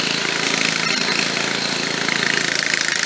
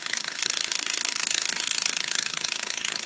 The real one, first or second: first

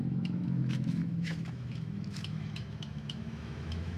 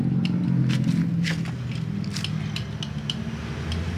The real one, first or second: second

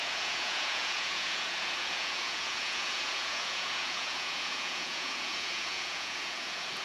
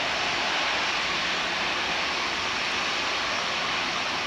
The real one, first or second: second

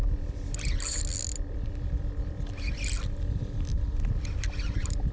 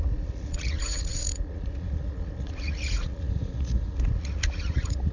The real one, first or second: first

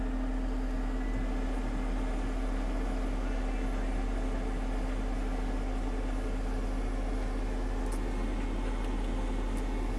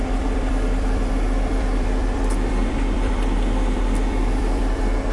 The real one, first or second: first